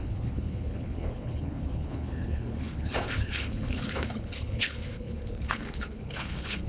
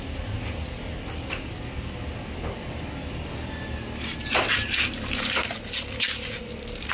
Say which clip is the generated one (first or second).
first